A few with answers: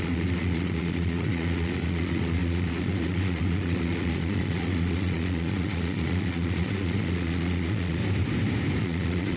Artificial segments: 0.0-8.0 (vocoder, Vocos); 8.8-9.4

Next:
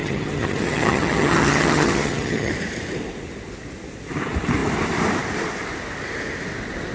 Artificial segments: 0.0-2.5 (vocoder, HiFi-GAN)

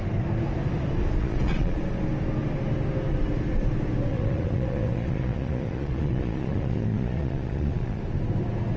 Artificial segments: 1.2-1.8 (vocoder, Vocos); 4.1-8.0

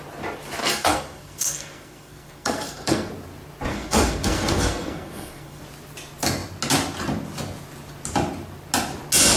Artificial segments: 0.6-3.1 (codec, SNAC); 3.7-5.6

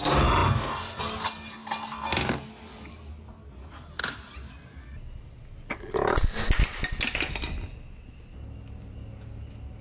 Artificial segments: none

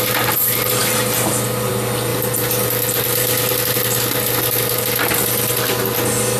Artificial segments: 0.8-1.7 (vocoder, BigVGAN v2); 2.1-5.1

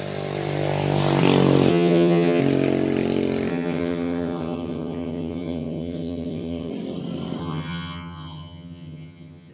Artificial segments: 1.7-2.4 (vocoder, HiFi-GAN); 3.5-6.7; 7.4-9.5